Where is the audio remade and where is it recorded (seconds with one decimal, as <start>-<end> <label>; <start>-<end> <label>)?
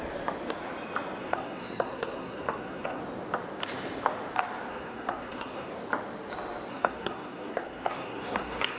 0.0-1.2 recorded; 1.2-3.0 remade; 3.0-4.7 recorded; 4.7-5.7 remade; 5.7-6.7 recorded; 6.7-8.8 remade